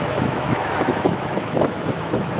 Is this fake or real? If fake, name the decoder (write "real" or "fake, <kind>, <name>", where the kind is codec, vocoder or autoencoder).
fake, autoencoder, DAC-VAE